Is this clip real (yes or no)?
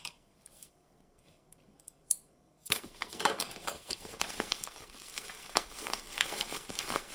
no